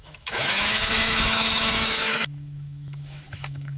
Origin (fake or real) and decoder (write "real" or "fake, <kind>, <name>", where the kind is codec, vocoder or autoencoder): fake, autoencoder, DAC-VAE